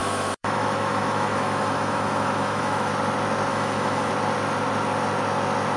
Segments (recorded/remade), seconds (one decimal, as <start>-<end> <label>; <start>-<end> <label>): 0.0-2.9 remade; 2.9-3.5 recorded; 3.5-4.1 remade; 4.1-5.8 recorded